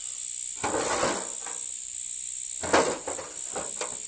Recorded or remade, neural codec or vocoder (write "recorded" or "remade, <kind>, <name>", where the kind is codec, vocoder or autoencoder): recorded